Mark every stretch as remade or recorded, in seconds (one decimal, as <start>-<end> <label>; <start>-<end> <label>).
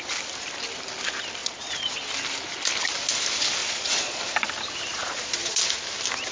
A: 0.0-1.4 recorded; 1.4-2.0 remade; 2.0-3.6 recorded; 3.6-4.2 remade; 4.2-4.9 recorded; 4.9-5.6 remade; 5.6-6.3 recorded